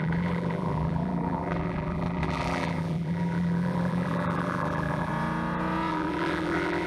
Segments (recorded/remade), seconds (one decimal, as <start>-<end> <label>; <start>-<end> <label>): 0.0-5.1 remade; 5.1-5.9 recorded; 5.9-6.9 remade